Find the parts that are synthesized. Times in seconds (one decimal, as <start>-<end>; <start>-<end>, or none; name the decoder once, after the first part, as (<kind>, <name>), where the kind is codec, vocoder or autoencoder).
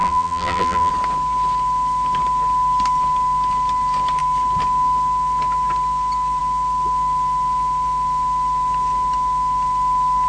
0.0-0.9 (vocoder, BigVGAN v2)